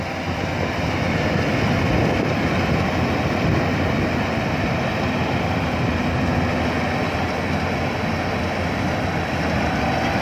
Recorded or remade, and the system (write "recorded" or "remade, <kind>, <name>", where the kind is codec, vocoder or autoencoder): recorded